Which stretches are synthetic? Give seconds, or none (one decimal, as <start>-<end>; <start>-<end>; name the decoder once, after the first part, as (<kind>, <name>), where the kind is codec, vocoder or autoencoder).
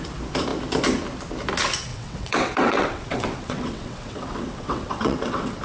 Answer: 1.9-5.6 (vocoder, WaveNeXt)